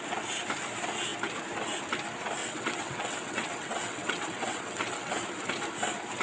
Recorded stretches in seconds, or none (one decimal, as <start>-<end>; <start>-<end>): 0.0-2.4; 5.1-6.2